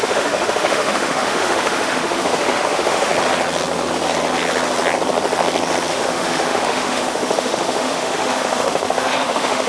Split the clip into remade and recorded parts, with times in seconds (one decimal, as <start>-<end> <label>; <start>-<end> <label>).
0.0-3.1 remade; 3.1-5.9 recorded; 5.9-9.7 remade